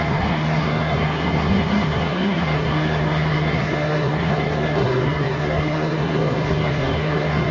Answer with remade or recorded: remade